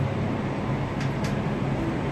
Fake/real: real